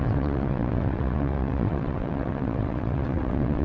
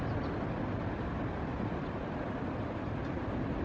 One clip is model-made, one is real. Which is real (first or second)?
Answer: second